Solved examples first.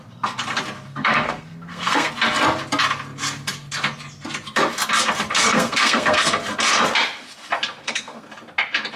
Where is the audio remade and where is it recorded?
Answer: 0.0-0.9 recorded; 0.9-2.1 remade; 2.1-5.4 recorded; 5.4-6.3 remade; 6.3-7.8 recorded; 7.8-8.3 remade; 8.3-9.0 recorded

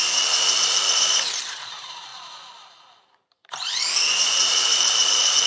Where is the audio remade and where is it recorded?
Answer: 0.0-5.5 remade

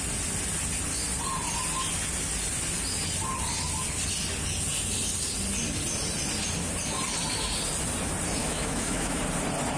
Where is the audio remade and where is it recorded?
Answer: 0.0-8.4 recorded; 8.4-9.2 remade; 9.2-9.8 recorded

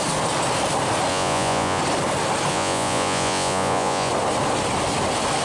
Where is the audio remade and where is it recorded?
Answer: 0.0-1.1 recorded; 1.1-1.8 remade; 1.8-2.5 recorded; 2.5-4.1 remade; 4.1-5.4 recorded

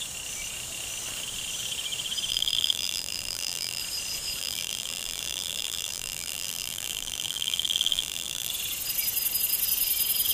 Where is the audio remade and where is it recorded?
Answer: 0.0-2.3 recorded; 2.3-3.8 remade; 3.8-4.4 recorded; 4.4-8.5 remade; 8.5-10.3 recorded

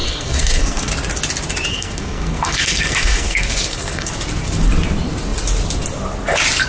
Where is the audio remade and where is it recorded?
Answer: 0.0-0.9 remade; 0.9-1.7 recorded; 1.7-4.1 remade; 4.1-6.7 recorded